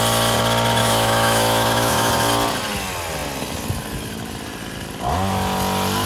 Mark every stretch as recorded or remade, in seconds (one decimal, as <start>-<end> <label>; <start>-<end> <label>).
0.0-0.8 recorded; 0.8-2.1 remade; 2.1-6.0 recorded